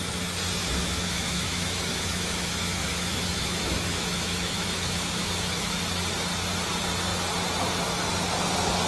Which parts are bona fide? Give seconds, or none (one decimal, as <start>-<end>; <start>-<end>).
0.0-0.6; 5.8-8.9